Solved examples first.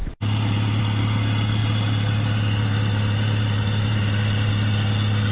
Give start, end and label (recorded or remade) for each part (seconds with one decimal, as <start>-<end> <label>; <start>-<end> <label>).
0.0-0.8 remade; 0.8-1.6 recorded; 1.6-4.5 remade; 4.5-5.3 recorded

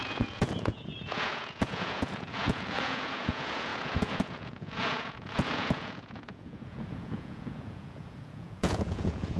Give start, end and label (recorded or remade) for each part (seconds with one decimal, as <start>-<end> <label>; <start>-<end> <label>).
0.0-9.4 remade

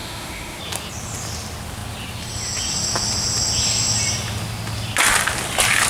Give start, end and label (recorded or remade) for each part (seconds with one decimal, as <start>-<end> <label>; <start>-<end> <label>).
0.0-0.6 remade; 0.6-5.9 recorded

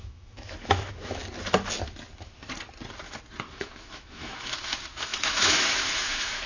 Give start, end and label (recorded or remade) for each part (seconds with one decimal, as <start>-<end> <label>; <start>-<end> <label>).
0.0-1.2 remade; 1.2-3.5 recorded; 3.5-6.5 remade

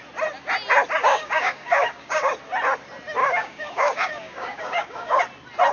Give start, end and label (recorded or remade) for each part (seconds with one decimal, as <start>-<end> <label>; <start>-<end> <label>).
0.0-1.0 recorded; 1.0-2.3 remade; 2.3-3.2 recorded; 3.2-5.2 remade; 5.2-5.7 recorded

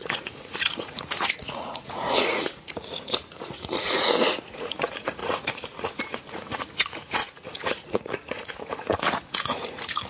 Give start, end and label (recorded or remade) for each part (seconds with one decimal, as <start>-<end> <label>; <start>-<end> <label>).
0.0-10.1 remade

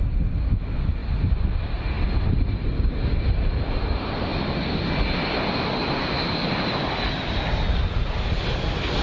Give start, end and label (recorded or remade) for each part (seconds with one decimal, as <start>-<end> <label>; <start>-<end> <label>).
0.0-9.0 recorded